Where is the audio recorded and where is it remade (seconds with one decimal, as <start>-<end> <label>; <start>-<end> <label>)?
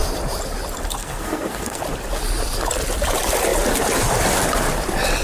0.0-1.0 recorded; 1.0-1.8 remade; 1.8-5.2 recorded